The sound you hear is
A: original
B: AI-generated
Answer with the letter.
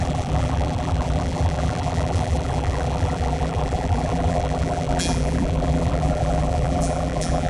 B